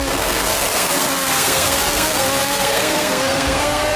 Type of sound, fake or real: fake